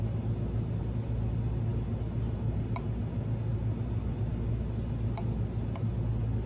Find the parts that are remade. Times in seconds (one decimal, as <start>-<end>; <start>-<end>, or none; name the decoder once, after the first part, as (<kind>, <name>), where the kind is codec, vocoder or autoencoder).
none